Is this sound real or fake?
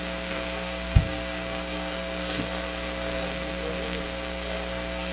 fake